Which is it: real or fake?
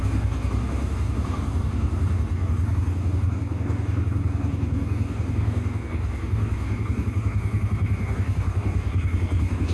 fake